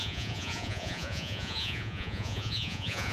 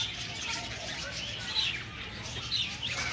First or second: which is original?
second